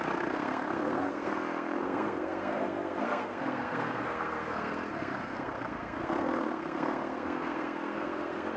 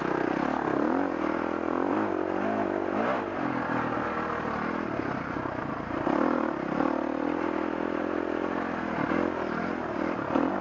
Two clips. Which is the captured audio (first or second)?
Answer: second